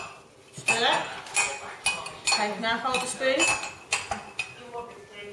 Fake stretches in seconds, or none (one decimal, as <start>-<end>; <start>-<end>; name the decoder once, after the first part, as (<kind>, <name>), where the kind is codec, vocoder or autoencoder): none